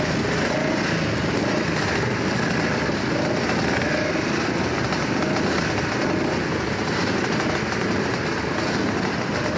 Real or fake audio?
real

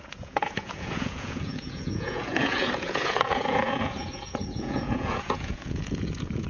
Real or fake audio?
fake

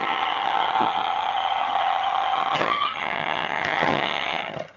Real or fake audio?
fake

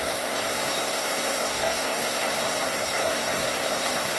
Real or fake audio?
fake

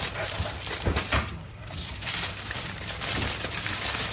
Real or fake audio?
fake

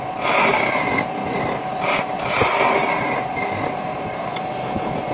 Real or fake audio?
real